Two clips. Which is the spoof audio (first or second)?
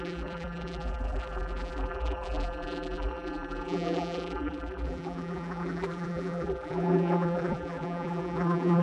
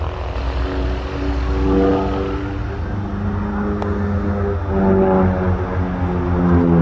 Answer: first